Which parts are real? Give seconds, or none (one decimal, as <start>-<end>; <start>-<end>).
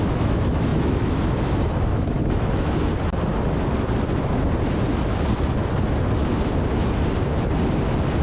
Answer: 2.9-8.2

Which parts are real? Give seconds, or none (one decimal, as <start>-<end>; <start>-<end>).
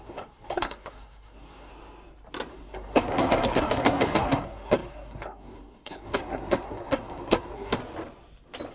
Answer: 1.7-2.5; 7.8-8.7